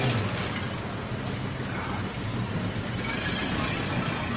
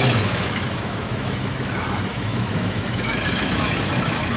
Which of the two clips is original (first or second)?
first